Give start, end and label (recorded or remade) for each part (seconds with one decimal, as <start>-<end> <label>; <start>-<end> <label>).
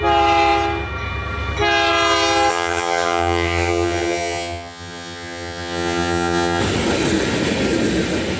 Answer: 0.0-2.5 recorded; 2.5-6.6 remade; 6.6-8.4 recorded